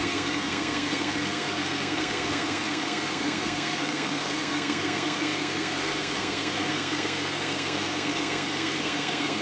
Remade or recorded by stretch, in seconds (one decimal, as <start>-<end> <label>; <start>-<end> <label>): 0.0-9.4 remade